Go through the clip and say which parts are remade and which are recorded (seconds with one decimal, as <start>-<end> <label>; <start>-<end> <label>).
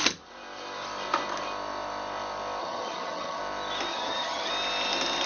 0.0-2.6 recorded; 2.6-3.4 remade; 3.4-3.9 recorded; 3.9-4.5 remade; 4.5-5.3 recorded